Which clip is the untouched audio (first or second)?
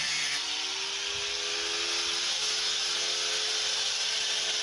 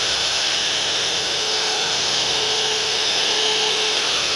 first